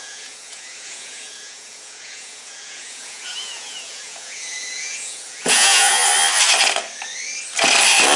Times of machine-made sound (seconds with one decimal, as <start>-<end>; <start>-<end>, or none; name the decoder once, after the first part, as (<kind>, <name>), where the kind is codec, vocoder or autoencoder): 0.0-6.0 (vocoder, Vocos)